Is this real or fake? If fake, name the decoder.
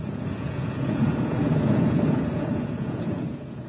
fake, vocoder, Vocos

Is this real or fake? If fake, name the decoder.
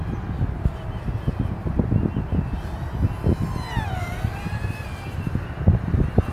real